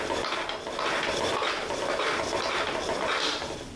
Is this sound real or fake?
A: real